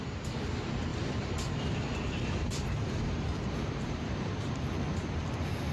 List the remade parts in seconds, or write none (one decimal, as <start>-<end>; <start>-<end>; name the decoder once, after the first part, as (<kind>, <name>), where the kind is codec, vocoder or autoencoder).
0.9-4.3 (vocoder, BigVGAN v2)